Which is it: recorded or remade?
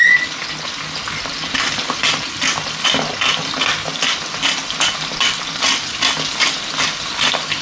recorded